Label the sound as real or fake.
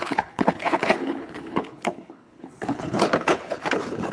fake